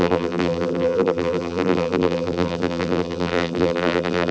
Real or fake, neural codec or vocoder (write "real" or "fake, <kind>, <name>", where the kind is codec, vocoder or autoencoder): fake, vocoder, BigVGAN v2